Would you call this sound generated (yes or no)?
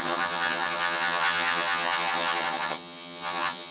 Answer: yes